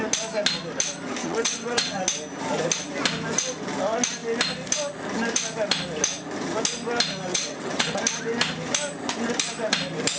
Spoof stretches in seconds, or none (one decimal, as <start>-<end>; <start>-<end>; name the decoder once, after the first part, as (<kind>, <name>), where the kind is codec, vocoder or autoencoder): 1.2-2.0 (vocoder, WaveNeXt); 7.3-8.0